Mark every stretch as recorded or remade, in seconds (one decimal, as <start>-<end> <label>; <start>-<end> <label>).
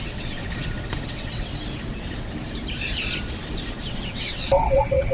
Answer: 0.0-0.4 remade; 0.4-1.1 recorded; 1.1-1.5 remade; 1.5-3.9 recorded; 3.9-5.1 remade